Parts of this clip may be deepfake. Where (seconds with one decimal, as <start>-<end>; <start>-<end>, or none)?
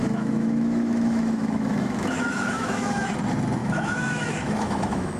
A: 0.0-3.1; 3.6-5.2